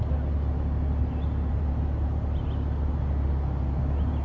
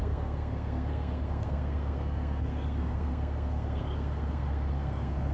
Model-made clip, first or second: second